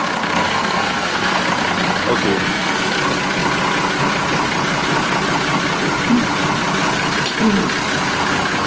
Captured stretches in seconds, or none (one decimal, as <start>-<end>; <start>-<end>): 0.0-0.4; 1.4-2.3; 2.9-8.7